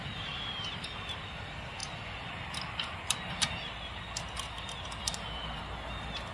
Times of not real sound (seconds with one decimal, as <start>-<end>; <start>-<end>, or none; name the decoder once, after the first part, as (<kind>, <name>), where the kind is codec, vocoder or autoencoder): none